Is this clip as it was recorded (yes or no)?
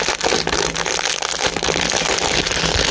yes